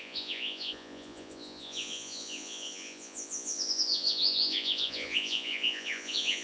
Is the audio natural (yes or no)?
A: no